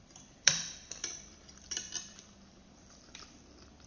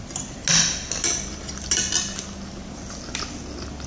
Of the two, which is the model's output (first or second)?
first